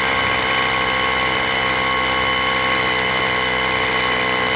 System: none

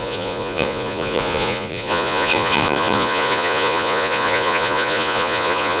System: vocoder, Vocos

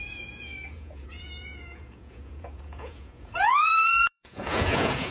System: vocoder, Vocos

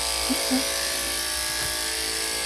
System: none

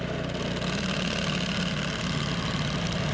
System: none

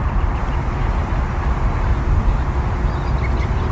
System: none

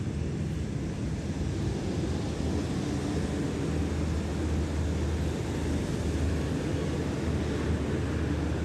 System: none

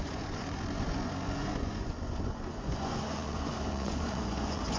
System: vocoder, Vocos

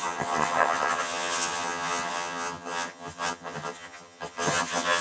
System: vocoder, HiFi-GAN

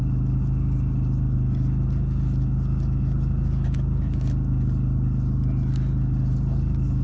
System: none